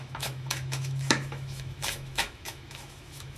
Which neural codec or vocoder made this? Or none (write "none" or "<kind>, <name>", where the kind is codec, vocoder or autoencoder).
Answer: autoencoder, DAC-VAE